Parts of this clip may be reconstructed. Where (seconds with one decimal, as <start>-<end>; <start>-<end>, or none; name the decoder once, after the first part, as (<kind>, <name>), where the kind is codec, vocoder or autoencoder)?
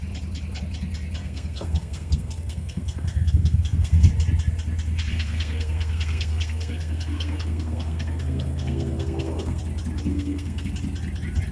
1.2-4.1 (codec, SNAC); 5.1-9.6; 10.1-10.7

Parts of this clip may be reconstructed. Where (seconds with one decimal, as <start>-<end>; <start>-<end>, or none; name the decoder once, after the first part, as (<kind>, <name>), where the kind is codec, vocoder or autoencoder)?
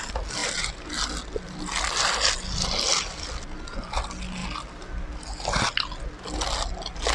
none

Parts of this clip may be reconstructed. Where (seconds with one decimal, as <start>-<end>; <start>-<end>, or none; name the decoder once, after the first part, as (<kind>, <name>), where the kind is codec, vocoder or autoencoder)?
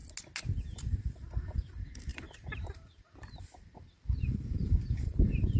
0.6-5.6 (vocoder, BigVGAN v2)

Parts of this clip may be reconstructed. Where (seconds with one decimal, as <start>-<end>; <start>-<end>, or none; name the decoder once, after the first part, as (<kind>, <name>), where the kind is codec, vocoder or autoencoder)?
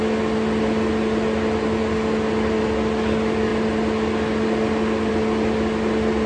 none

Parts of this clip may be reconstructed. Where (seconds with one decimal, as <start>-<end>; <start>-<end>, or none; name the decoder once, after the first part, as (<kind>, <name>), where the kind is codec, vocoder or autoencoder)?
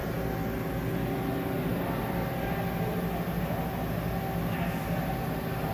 none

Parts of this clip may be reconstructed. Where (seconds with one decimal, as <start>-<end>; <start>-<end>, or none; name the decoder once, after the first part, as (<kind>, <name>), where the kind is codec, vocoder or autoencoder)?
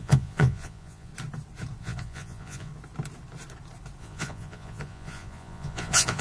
0.0-1.1 (vocoder, Vocos); 1.8-2.7; 4.0-6.2